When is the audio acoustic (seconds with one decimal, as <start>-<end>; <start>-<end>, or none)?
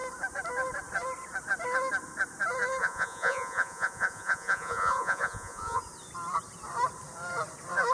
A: 0.0-2.8; 5.8-7.9